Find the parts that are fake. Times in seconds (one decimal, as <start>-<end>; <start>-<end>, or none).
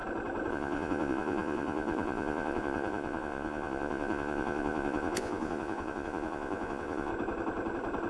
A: 0.5-7.1